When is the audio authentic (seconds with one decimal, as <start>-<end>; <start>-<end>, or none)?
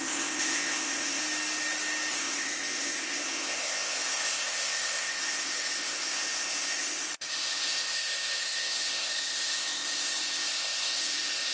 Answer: 1.2-2.1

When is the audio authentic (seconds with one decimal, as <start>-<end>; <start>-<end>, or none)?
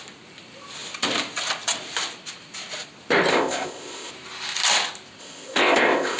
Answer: 0.0-3.3; 4.1-5.2